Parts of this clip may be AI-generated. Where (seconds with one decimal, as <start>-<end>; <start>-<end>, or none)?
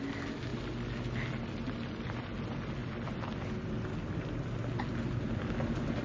none